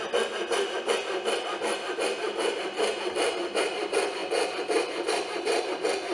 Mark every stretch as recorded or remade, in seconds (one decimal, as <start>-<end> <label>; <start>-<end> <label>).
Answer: 0.0-6.1 recorded